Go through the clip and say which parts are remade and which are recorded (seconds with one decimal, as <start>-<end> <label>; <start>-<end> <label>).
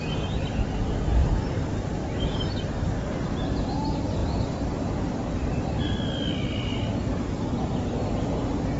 0.0-2.0 recorded; 2.0-3.1 remade; 3.1-4.2 recorded; 4.2-7.9 remade; 7.9-8.8 recorded